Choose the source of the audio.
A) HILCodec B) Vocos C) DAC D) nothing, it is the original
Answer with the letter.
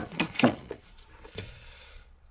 B